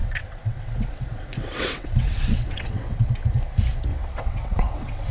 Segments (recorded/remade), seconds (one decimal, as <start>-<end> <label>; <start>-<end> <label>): 0.0-3.1 remade; 3.1-3.9 recorded; 3.9-5.1 remade